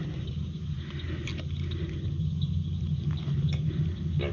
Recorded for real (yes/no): yes